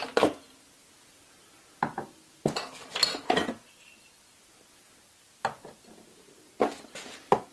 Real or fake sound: real